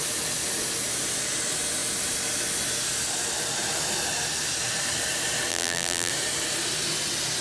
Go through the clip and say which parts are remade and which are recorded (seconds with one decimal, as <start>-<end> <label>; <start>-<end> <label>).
0.0-5.5 recorded; 5.5-6.1 remade; 6.1-7.4 recorded